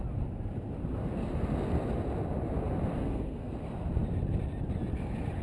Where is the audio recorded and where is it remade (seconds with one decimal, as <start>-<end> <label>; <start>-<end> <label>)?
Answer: 0.0-3.0 recorded; 3.0-3.5 remade; 3.5-5.4 recorded